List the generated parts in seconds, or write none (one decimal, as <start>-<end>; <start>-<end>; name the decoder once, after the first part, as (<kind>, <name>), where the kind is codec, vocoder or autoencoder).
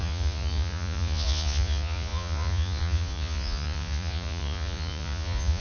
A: 0.0-5.6 (vocoder, Vocos)